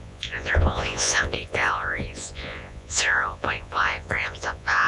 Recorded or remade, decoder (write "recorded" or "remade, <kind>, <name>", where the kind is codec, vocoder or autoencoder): remade, vocoder, Vocos